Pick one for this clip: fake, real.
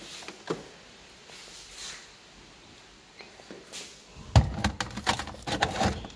real